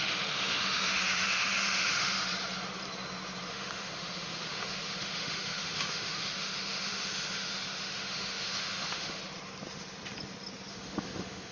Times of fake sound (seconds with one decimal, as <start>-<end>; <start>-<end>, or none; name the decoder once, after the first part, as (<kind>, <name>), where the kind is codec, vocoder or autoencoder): 0.0-2.2 (autoencoder, DAC-VAE); 3.5-9.2; 10.7-11.5